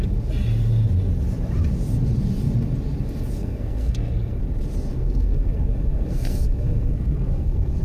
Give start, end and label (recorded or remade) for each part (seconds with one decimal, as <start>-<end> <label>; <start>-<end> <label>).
0.0-3.4 recorded; 3.4-4.4 remade; 4.4-4.9 recorded; 4.9-7.8 remade